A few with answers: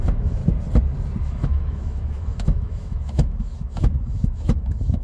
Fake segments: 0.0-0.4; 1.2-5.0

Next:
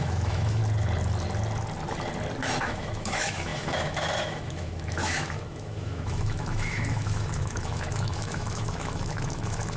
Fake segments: 0.0-0.6; 2.6-9.8

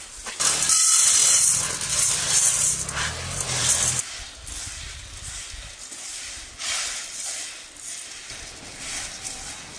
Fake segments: none

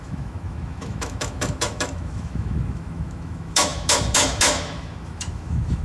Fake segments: 0.0-5.8

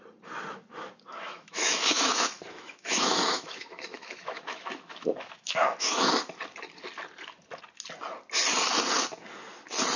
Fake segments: 1.1-6.1